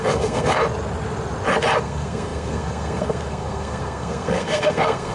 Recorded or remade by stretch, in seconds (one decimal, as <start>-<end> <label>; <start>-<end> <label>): 0.0-0.6 remade; 0.6-1.8 recorded; 1.8-5.1 remade